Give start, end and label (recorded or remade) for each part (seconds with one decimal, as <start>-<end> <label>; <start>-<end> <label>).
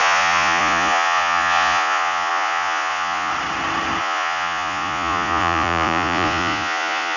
0.0-3.3 remade; 3.3-4.0 recorded; 4.0-7.2 remade